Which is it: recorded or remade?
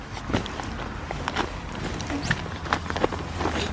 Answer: recorded